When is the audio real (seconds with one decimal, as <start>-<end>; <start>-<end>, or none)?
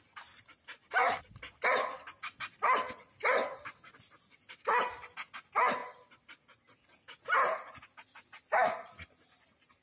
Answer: 0.0-9.8